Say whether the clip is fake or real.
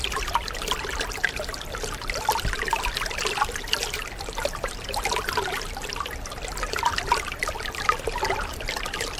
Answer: fake